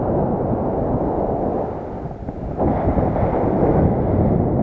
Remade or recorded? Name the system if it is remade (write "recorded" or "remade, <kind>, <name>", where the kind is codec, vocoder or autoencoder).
recorded